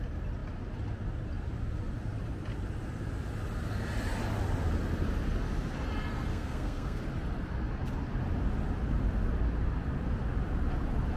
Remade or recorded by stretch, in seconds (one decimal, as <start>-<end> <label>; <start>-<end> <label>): 0.0-6.3 recorded; 6.3-7.0 remade; 7.0-11.2 recorded

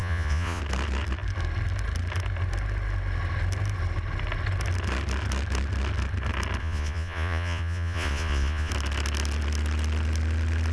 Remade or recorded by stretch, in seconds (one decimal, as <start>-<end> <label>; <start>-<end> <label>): 0.0-0.6 remade; 0.6-6.6 recorded; 6.6-8.7 remade; 8.7-10.7 recorded

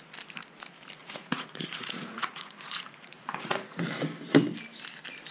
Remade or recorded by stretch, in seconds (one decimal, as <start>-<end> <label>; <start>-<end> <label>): 0.0-1.0 recorded; 1.0-3.8 remade; 3.8-5.3 recorded